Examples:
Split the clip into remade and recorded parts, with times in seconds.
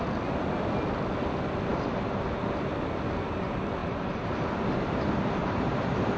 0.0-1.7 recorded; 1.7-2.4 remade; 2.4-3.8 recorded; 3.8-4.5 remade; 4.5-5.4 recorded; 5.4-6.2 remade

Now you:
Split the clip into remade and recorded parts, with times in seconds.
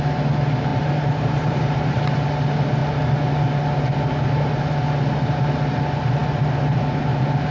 0.0-0.7 recorded; 0.7-2.0 remade; 2.0-7.5 recorded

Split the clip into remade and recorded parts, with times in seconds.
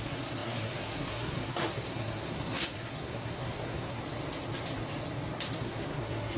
0.0-4.0 remade; 4.0-5.6 recorded; 5.6-6.4 remade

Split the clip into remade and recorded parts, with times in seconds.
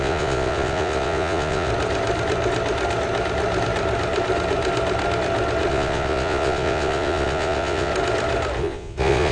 0.0-1.7 remade; 1.7-5.7 recorded; 5.7-7.9 remade; 7.9-8.6 recorded; 8.6-9.3 remade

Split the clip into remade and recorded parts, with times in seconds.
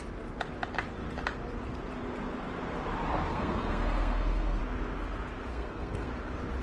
0.0-3.3 recorded; 3.3-4.6 remade; 4.6-5.5 recorded; 5.5-6.1 remade; 6.1-6.6 recorded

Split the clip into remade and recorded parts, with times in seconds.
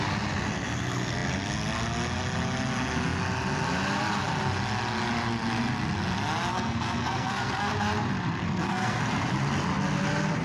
0.0-6.5 recorded; 6.5-7.7 remade; 7.7-8.4 recorded; 8.4-9.0 remade; 9.0-10.4 recorded